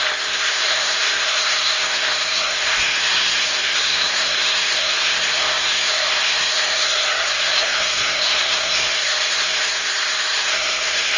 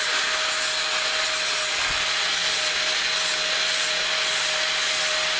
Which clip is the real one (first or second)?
second